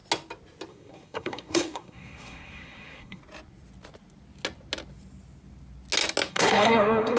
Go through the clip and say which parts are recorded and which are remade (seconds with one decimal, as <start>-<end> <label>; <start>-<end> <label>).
0.0-0.7 recorded; 0.7-3.2 remade; 3.2-6.3 recorded; 6.3-7.2 remade